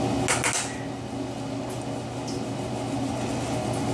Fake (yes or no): no